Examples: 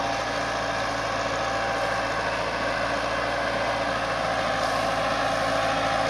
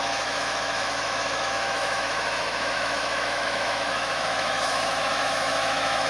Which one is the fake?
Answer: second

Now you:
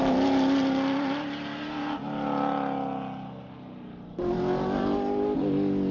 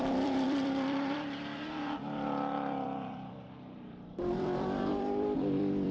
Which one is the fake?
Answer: second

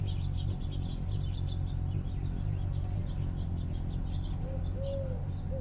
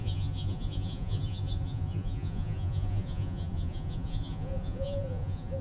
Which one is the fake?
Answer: second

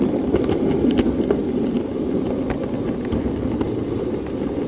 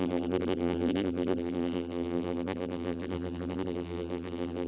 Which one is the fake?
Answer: second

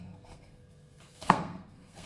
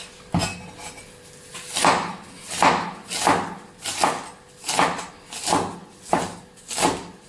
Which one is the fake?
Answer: first